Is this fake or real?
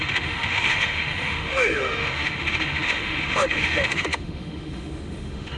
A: fake